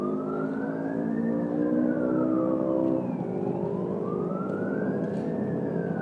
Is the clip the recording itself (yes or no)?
no